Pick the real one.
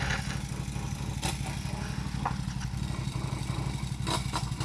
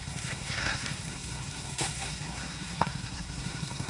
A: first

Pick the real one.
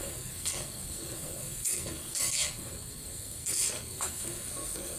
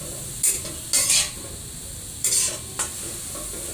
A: second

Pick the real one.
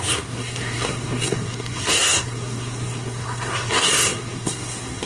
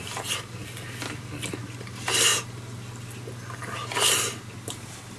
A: second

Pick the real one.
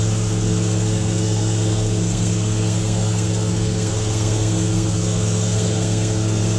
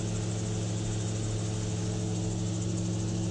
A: second